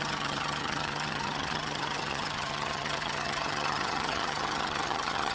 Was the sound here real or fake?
fake